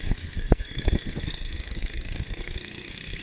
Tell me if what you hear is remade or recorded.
remade